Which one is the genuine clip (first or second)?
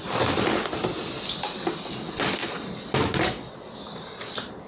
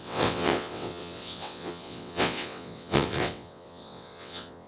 first